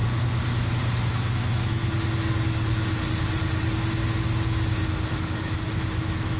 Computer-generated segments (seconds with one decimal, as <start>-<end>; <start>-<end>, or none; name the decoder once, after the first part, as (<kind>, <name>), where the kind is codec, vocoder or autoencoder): 1.1-1.8 (autoencoder, DAC-VAE); 5.1-6.4